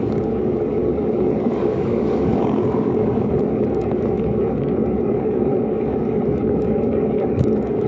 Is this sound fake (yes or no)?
yes